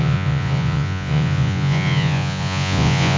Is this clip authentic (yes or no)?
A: no